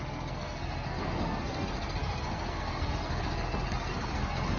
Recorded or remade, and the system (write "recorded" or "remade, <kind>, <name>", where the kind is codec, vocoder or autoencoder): remade, codec, SNAC